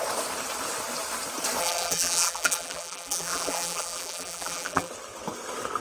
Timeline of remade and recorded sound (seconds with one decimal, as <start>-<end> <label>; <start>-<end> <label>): 0.0-1.6 recorded; 1.6-4.9 remade; 4.9-5.8 recorded